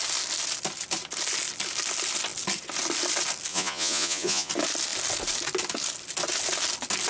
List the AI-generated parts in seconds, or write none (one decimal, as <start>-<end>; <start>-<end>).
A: 3.5-4.5